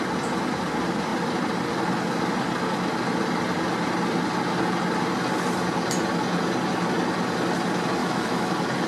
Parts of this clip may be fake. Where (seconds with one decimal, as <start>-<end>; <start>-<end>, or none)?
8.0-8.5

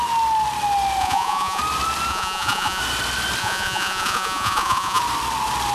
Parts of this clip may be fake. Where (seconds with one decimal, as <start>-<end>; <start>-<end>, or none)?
1.0-1.6; 2.1-2.8; 3.4-5.0

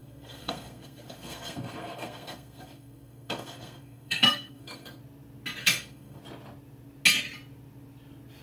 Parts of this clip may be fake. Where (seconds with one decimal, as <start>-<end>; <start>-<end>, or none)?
0.0-5.0; 5.6-6.2